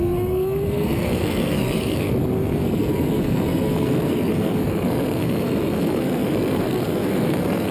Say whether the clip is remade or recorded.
remade